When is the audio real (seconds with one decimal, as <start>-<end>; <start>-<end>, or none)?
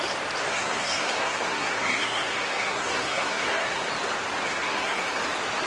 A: 0.0-0.5; 3.9-4.5; 5.2-5.7